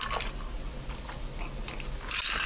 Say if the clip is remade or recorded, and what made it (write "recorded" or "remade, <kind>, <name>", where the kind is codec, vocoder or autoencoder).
recorded